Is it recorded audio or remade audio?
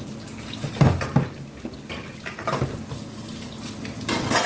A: recorded